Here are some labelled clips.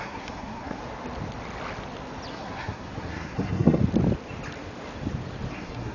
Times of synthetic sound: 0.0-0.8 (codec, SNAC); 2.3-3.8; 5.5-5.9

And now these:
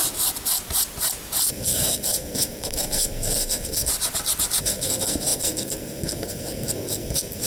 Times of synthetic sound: 1.5-3.9 (codec, SNAC); 4.6-7.5

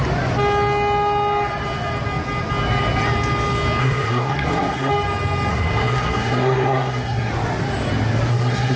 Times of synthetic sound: 3.8-4.9 (codec, SNAC); 5.5-7.3; 8.3-8.8